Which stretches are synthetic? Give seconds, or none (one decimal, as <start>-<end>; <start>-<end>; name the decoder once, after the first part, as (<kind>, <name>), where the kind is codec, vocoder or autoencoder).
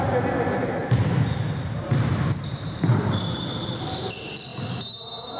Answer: 0.8-4.0 (vocoder, BigVGAN v2)